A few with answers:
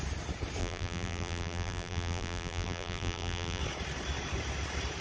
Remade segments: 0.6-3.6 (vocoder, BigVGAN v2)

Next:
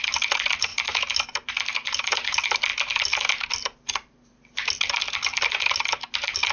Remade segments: none

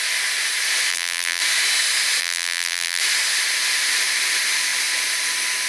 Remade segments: 0.9-1.4 (vocoder, BigVGAN v2); 2.2-3.0

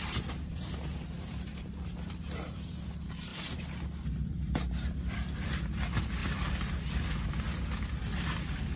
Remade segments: 0.5-2.7 (vocoder, BigVGAN v2); 3.3-5.6; 6.2-7.3